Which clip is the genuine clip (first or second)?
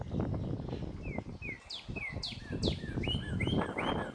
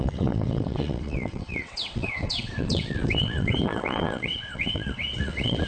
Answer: first